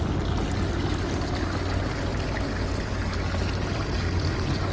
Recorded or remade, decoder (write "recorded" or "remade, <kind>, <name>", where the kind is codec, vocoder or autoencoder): recorded